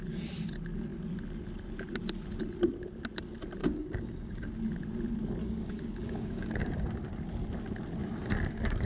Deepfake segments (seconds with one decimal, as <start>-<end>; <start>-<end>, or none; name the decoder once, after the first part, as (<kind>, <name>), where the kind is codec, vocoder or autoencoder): 3.6-4.5 (codec, DAC); 5.4-6.9; 8.0-8.9